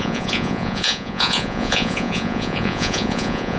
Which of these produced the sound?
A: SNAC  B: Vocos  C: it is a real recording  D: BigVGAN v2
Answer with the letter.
B